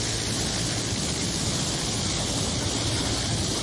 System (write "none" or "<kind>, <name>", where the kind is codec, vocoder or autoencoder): none